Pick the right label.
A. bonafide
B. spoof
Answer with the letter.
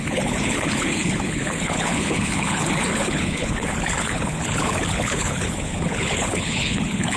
B